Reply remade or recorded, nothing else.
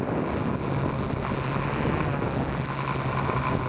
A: recorded